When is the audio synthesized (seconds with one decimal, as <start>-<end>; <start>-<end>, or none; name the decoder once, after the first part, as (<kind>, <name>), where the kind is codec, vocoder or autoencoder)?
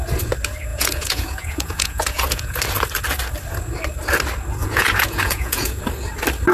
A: 0.7-2.6 (vocoder, Vocos); 4.6-5.8